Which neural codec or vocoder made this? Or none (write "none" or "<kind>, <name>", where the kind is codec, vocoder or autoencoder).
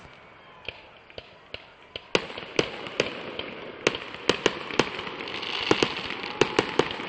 none